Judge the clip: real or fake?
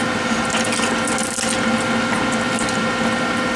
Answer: real